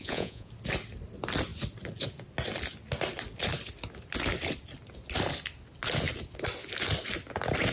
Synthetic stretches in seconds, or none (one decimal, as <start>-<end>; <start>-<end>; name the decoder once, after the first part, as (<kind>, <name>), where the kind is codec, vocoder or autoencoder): 0.0-0.5 (vocoder, Vocos)